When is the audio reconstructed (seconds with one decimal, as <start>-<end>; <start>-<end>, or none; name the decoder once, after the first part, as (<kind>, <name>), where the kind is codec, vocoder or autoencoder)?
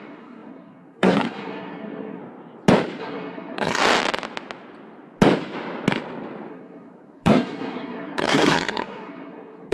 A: 0.0-2.2 (codec, SNAC); 3.0-3.8; 6.5-9.7